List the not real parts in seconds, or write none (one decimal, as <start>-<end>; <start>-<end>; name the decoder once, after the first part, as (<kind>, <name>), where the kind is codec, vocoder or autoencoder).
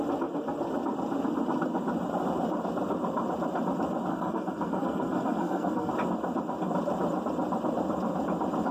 4.1-5.9 (codec, SNAC)